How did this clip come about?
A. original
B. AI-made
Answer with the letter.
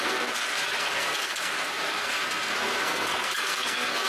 B